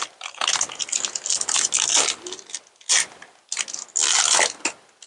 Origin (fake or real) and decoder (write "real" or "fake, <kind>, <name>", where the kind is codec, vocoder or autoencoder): real